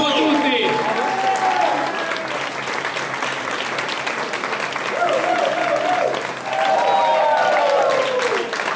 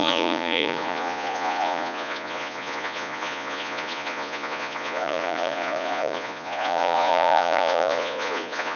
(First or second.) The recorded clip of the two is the first